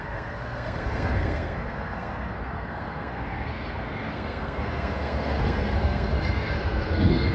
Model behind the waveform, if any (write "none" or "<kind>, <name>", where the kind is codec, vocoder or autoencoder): codec, SNAC